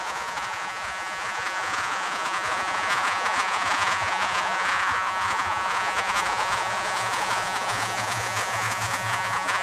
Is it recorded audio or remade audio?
remade